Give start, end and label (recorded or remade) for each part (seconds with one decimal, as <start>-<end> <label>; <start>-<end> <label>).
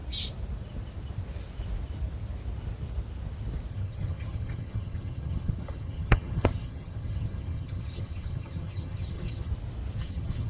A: 0.0-3.7 recorded; 3.7-9.5 remade; 9.5-10.0 recorded; 10.0-10.5 remade